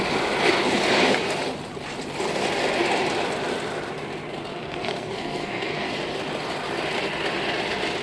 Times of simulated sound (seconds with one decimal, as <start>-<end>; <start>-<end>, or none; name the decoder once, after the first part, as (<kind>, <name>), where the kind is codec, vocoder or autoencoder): 4.5-5.9 (codec, SNAC)